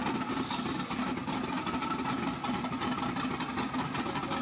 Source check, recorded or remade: recorded